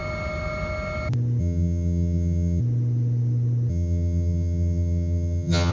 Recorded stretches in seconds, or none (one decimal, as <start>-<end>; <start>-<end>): 0.0-1.4; 2.6-3.7